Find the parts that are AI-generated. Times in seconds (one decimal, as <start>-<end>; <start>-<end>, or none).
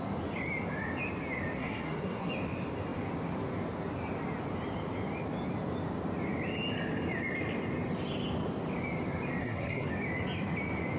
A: 1.6-2.3; 9.4-9.9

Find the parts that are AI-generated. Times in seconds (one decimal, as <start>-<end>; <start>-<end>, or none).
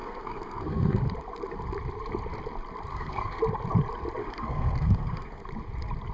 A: 0.0-1.0; 2.9-3.4; 4.2-5.4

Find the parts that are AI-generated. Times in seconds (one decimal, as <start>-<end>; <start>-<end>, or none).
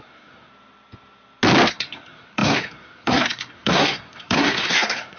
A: 0.0-0.5; 1.7-5.2